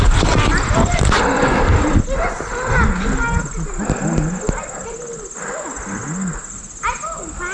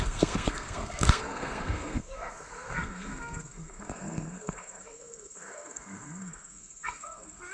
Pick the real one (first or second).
first